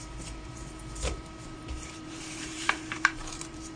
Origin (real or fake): fake